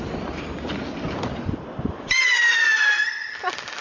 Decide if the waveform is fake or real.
real